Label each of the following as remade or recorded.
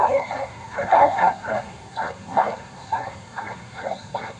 remade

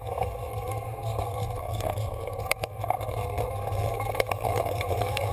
remade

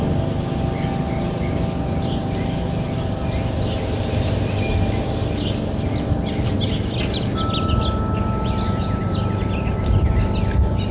recorded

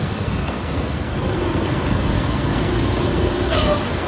remade